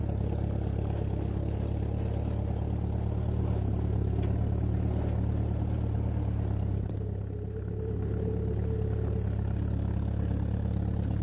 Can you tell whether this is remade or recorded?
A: recorded